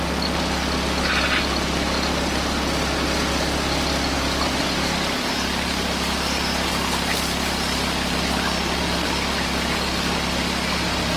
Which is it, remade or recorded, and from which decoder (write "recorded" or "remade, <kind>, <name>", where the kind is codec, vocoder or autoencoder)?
recorded